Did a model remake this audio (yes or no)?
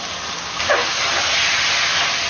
no